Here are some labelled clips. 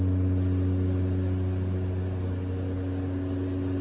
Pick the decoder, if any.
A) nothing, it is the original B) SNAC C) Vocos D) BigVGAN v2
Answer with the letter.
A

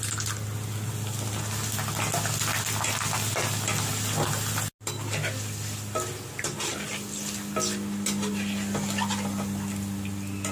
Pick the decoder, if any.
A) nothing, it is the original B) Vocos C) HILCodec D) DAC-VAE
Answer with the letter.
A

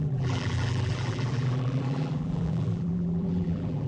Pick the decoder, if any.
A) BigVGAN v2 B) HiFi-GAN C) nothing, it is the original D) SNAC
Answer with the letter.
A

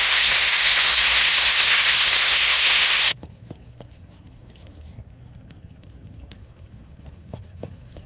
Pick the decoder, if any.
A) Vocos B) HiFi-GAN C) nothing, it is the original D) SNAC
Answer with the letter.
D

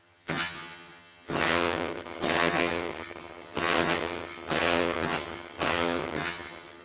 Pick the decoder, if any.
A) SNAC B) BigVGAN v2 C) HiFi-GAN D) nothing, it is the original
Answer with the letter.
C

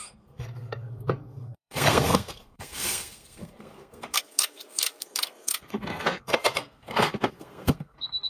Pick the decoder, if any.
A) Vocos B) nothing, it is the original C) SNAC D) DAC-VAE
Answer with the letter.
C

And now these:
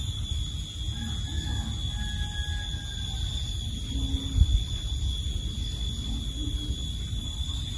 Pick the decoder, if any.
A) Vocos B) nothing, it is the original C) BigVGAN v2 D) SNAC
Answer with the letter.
B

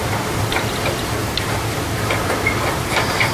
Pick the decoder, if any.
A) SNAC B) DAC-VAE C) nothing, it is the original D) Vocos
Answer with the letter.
C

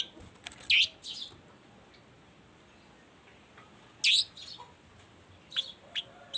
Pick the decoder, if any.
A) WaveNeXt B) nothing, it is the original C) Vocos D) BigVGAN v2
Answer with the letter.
B